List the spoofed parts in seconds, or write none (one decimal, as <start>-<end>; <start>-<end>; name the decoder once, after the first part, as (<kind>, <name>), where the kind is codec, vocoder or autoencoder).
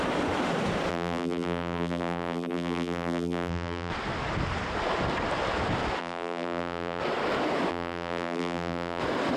0.9-3.9 (vocoder, BigVGAN v2); 6.0-7.0; 7.7-9.0